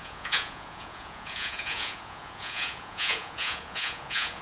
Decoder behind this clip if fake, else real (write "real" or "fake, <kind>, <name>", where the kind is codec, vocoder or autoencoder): fake, vocoder, Vocos